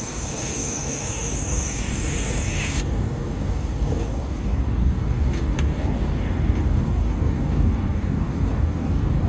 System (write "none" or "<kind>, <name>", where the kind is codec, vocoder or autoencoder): codec, DAC